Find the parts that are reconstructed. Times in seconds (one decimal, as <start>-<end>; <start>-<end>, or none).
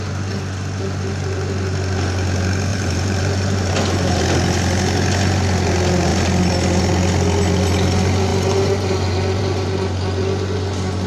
2.7-3.7